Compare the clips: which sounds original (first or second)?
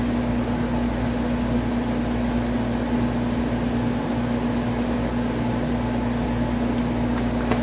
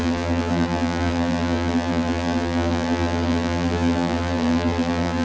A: first